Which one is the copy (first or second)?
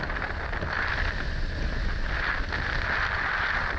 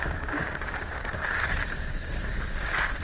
second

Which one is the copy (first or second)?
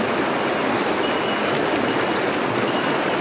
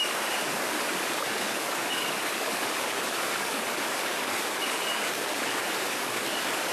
second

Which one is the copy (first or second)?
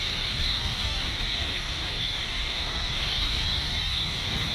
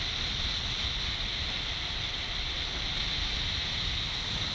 first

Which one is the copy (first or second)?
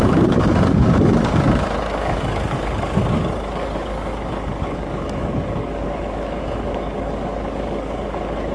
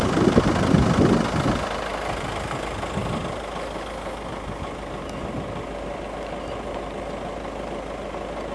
first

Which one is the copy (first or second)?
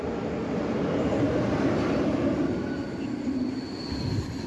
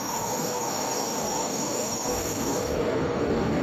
second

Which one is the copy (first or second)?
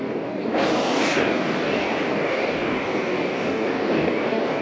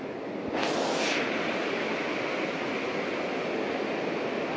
first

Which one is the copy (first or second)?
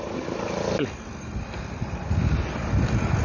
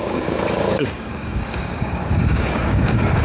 second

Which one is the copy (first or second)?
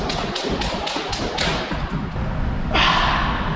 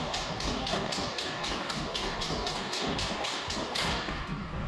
second